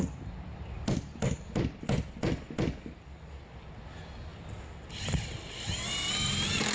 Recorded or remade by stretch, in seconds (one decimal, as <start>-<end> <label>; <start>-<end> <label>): 0.0-6.7 recorded